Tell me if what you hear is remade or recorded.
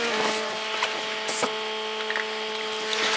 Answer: recorded